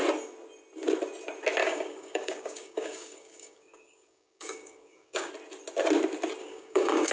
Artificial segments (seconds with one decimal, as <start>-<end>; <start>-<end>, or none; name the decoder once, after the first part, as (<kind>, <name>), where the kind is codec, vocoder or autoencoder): 1.6-5.3 (codec, DAC); 6.4-7.1